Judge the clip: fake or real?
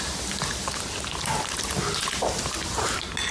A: real